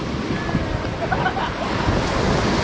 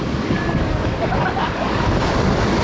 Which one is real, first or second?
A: first